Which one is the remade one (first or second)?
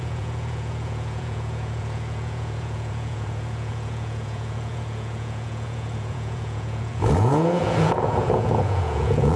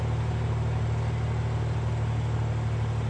first